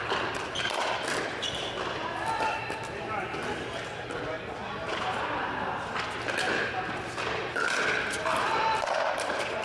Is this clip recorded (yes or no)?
yes